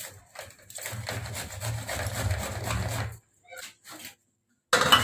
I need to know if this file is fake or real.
real